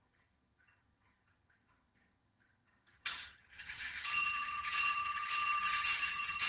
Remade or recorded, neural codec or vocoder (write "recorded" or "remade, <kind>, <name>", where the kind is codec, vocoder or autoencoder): remade, vocoder, HiFi-GAN